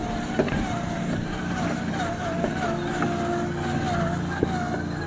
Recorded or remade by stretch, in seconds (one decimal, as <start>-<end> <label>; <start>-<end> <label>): 0.0-2.5 remade; 2.5-5.1 recorded